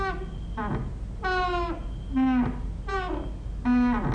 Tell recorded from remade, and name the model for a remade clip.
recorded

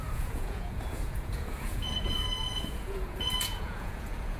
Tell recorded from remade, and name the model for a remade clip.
remade, vocoder, Vocos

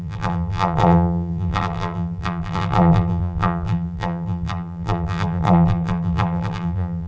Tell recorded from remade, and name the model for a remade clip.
remade, vocoder, BigVGAN v2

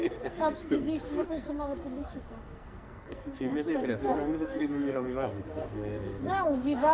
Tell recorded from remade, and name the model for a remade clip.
remade, codec, SNAC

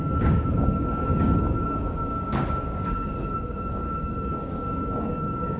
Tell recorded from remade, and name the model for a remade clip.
remade, codec, DAC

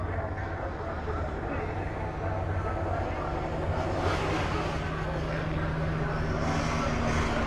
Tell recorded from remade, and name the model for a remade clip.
recorded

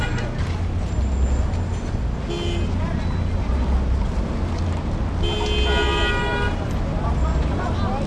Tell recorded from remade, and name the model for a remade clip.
recorded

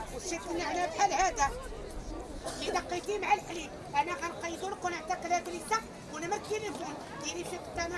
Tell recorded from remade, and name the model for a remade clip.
recorded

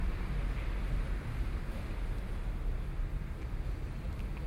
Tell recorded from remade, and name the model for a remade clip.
recorded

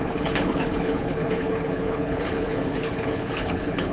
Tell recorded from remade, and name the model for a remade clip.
remade, codec, HILCodec